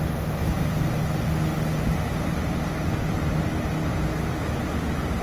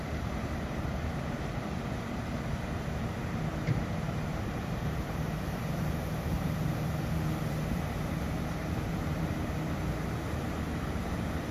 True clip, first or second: first